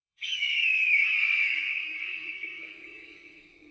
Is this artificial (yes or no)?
yes